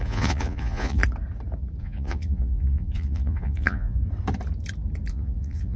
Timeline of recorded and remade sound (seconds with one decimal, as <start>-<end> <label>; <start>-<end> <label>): 0.0-1.0 remade; 1.0-1.8 recorded; 1.8-4.0 remade; 4.0-5.1 recorded; 5.1-5.8 remade